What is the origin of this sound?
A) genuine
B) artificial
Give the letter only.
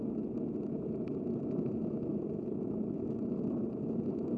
A